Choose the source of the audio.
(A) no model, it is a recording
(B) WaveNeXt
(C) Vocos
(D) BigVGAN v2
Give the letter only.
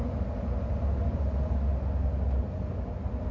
A